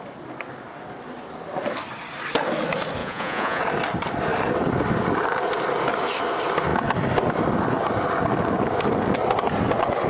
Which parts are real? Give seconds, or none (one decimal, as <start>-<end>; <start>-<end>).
0.0-3.0; 3.6-10.1